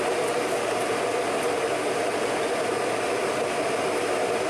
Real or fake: real